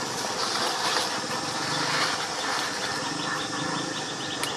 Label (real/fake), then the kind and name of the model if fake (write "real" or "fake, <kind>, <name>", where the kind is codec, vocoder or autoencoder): real